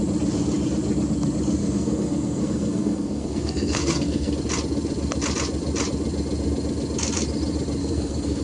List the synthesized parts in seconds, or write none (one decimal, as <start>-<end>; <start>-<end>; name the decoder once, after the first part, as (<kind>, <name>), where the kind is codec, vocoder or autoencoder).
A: 1.6-4.3 (codec, SNAC); 7.8-8.4